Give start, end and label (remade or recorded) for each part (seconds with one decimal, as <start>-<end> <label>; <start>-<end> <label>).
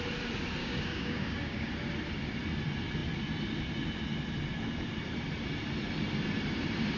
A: 0.0-0.6 recorded; 0.6-1.7 remade; 1.7-7.0 recorded